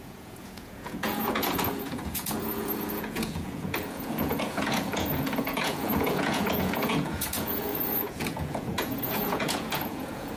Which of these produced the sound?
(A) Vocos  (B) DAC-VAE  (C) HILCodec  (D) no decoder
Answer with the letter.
A